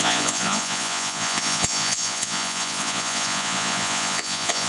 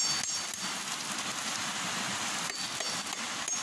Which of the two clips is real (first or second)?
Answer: second